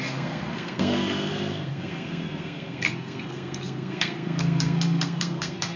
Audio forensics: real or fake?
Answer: fake